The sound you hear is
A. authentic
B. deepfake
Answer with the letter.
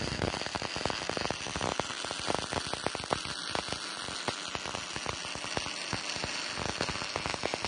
A